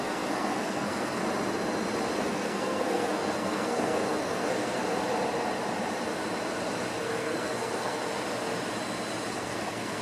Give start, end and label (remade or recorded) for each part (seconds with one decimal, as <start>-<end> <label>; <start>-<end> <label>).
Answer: 0.0-1.2 remade; 1.2-2.2 recorded; 2.2-4.8 remade; 4.8-7.0 recorded; 7.0-8.0 remade; 8.0-9.3 recorded; 9.3-10.0 remade